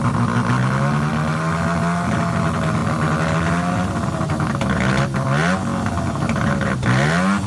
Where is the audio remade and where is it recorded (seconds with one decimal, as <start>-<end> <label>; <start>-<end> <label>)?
0.0-7.5 recorded